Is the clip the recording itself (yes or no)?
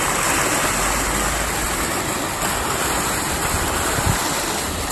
yes